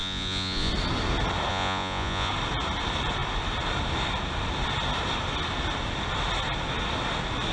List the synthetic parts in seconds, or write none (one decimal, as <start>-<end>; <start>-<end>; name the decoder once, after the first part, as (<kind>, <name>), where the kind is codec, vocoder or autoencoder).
0.0-0.7 (vocoder, Vocos); 1.5-2.3